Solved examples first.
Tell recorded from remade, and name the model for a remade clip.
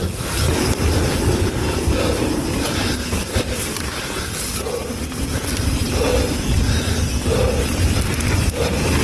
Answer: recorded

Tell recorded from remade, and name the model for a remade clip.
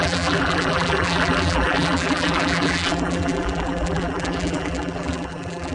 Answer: remade, vocoder, BigVGAN v2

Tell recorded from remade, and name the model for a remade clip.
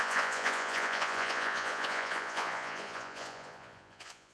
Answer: remade, vocoder, Vocos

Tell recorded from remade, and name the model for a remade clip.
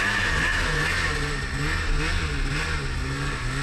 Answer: recorded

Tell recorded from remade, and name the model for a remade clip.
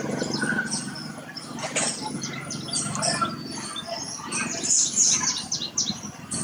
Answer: recorded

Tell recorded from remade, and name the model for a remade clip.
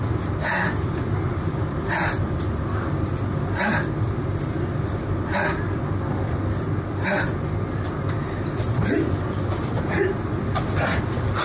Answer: recorded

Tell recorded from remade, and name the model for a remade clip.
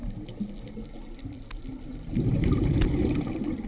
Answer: recorded